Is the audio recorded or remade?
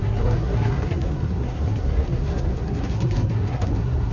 remade